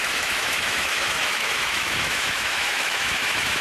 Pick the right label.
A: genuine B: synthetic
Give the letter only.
B